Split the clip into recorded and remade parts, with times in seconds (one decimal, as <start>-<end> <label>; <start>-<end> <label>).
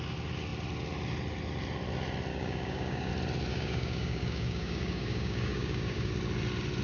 0.0-2.3 recorded; 2.3-3.1 remade; 3.1-3.5 recorded; 3.5-6.1 remade; 6.1-6.8 recorded